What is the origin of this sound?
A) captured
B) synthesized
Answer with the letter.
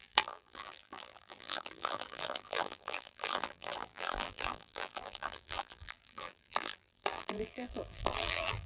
B